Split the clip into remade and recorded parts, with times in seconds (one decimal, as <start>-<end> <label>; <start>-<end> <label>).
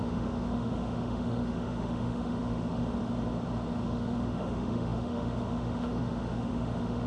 0.0-2.8 remade; 2.8-3.8 recorded; 3.8-7.1 remade